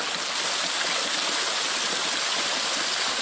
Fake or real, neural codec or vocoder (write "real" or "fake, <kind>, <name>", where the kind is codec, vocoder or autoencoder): real